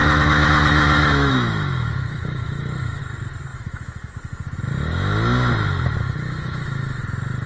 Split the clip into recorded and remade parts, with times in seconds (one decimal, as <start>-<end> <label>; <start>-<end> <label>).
0.0-3.0 remade; 3.0-3.5 recorded; 3.5-4.1 remade; 4.1-6.0 recorded; 6.0-7.0 remade; 7.0-7.5 recorded